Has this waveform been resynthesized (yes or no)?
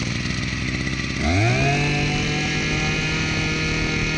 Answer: no